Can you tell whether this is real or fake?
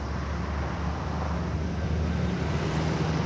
real